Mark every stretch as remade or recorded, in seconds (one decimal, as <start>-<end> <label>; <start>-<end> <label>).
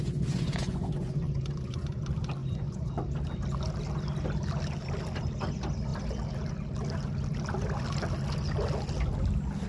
0.0-2.0 remade; 2.0-2.4 recorded; 2.4-2.9 remade; 2.9-9.7 recorded